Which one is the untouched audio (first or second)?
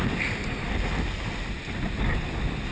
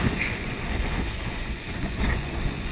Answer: first